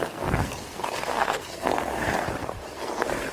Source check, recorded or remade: remade